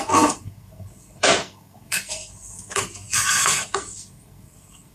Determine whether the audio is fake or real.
fake